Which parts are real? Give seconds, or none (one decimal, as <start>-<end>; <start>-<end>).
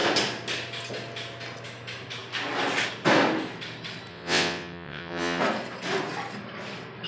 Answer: 0.0-4.1; 5.4-7.1